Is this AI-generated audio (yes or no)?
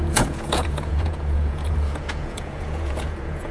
yes